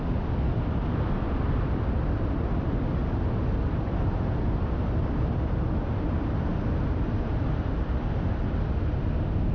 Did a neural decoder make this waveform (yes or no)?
no